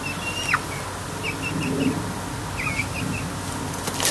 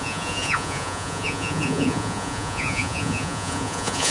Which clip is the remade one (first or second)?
second